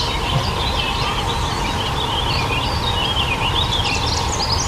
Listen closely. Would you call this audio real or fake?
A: real